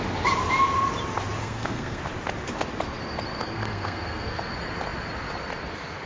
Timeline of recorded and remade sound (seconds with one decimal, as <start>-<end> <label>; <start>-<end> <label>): 0.0-1.4 recorded; 1.4-2.0 remade; 2.0-3.4 recorded; 3.4-4.5 remade; 4.5-6.1 recorded